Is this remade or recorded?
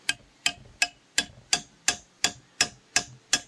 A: recorded